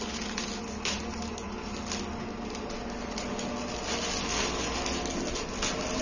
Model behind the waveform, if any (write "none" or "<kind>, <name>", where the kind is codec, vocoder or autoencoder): none